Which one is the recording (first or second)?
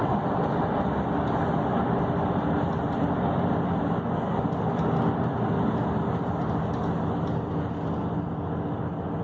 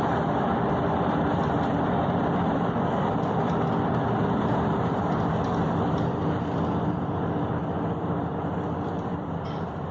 first